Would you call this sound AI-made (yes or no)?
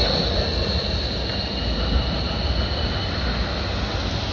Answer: no